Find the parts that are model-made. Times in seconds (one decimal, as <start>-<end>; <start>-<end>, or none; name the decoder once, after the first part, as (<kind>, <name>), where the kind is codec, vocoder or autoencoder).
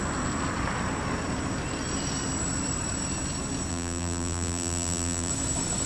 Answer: 3.7-5.3 (vocoder, BigVGAN v2)